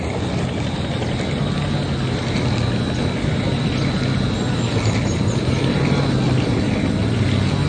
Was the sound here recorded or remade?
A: recorded